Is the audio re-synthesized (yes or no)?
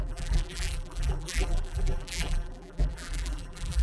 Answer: yes